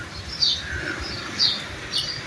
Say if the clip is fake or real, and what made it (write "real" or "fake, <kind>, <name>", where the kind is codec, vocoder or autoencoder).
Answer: real